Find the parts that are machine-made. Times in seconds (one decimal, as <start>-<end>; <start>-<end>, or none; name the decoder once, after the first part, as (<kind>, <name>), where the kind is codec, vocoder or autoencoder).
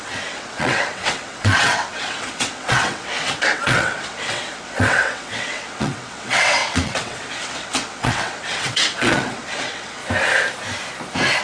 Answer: 0.0-10.0 (vocoder, WaveNeXt)